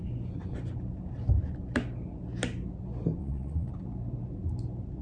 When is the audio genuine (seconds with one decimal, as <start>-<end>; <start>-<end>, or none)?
0.0-3.2; 3.7-5.0